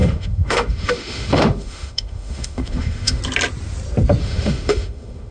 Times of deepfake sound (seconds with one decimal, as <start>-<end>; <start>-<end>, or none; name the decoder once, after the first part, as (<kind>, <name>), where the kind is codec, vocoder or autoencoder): 0.0-3.2 (autoencoder, DAC-VAE); 4.2-5.3